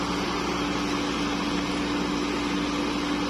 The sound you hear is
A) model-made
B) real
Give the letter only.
B